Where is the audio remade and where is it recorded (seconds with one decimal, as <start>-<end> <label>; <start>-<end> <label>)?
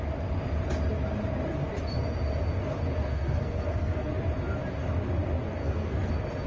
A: 0.0-3.0 recorded; 3.0-4.1 remade; 4.1-5.6 recorded; 5.6-6.1 remade; 6.1-6.5 recorded